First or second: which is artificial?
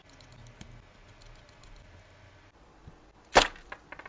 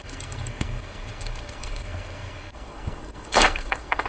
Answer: second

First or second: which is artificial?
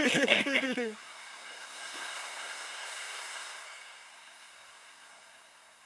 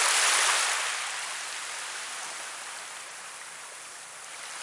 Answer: first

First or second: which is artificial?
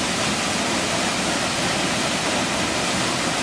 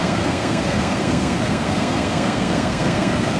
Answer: second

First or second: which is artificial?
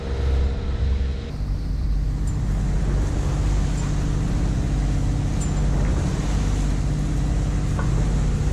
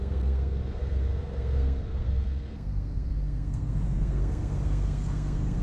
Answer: second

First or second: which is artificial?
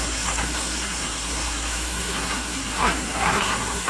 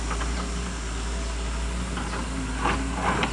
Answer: first